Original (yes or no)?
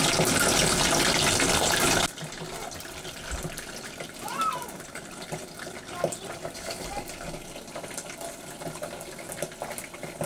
yes